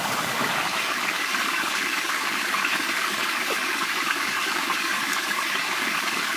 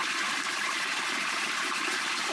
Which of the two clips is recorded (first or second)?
second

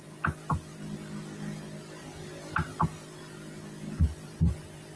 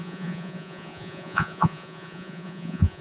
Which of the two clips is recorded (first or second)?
first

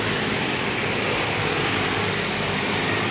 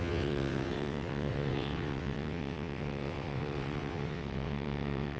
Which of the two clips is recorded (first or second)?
first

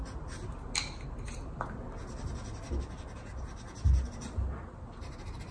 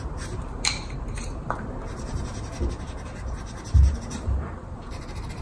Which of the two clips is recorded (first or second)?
first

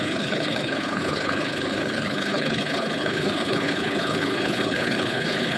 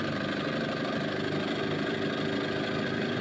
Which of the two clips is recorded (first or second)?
second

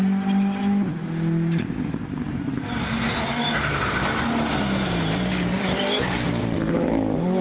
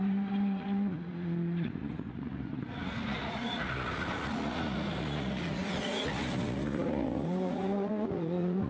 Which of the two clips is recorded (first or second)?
first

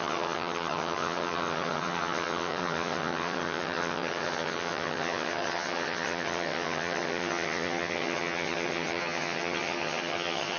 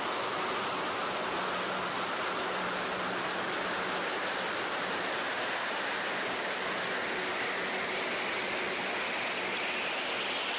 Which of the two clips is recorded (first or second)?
second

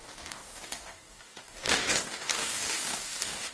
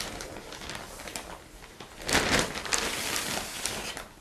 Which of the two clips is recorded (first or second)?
second